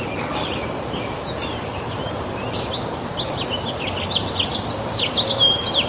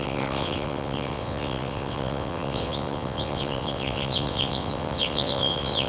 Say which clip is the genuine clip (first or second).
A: first